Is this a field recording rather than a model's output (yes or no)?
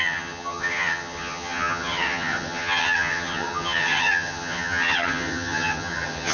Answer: no